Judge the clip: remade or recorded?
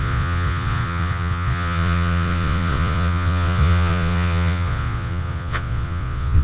remade